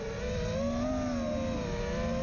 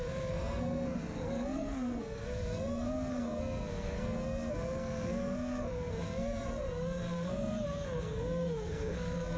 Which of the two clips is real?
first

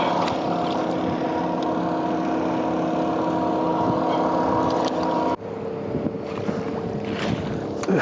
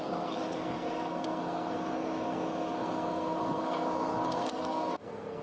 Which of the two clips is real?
first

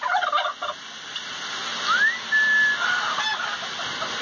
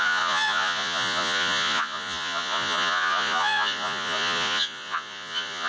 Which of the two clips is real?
first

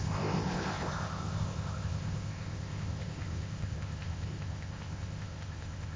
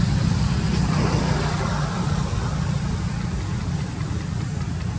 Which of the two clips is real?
second